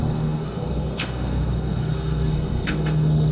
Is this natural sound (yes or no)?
no